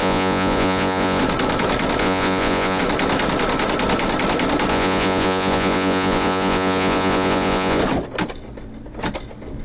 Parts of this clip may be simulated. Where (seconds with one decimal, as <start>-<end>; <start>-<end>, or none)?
0.0-1.2; 2.0-2.8; 4.7-7.8